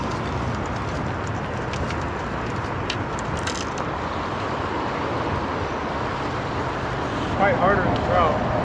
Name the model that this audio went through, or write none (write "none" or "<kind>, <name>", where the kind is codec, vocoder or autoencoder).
none